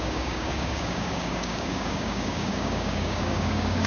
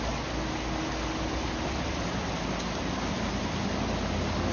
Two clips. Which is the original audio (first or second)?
second